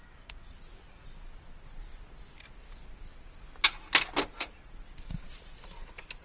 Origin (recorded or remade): recorded